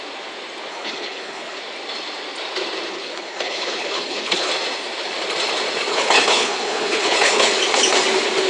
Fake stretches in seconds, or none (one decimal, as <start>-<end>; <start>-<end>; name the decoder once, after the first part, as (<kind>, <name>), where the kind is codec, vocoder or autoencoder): 0.7-1.6 (codec, HILCodec); 2.9-4.5; 5.9-7.5